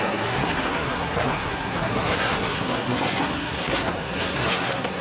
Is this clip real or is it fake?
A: fake